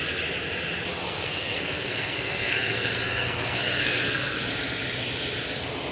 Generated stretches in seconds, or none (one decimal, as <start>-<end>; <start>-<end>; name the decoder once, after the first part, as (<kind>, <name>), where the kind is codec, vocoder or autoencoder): 1.0-4.5 (codec, SNAC)